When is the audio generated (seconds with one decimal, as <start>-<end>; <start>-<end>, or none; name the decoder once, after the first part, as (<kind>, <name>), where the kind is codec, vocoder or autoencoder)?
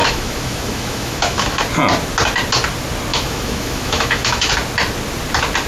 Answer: 0.0-1.6 (autoencoder, DAC-VAE); 3.1-4.5